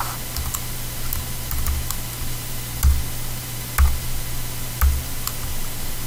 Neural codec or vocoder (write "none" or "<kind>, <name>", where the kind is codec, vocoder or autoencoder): none